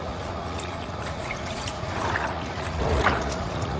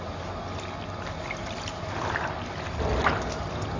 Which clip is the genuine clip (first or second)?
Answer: second